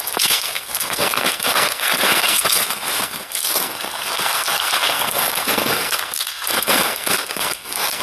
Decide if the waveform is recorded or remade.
remade